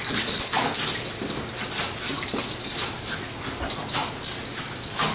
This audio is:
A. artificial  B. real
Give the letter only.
B